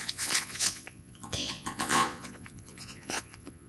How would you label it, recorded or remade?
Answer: remade